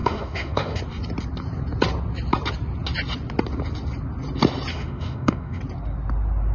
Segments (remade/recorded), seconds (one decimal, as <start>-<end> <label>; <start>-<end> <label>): 0.0-0.8 remade; 0.8-4.7 recorded; 4.7-5.6 remade; 5.6-6.5 recorded